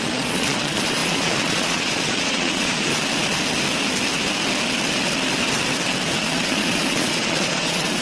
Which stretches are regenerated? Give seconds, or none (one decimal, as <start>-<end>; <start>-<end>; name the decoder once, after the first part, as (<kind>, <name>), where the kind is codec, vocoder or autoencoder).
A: 0.0-2.9 (vocoder, Vocos); 6.2-8.0